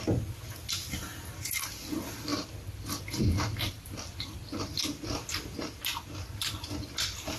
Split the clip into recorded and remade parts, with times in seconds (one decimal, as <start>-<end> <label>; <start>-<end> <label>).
0.0-2.3 recorded; 2.3-4.8 remade; 4.8-5.9 recorded; 5.9-6.5 remade; 6.5-7.4 recorded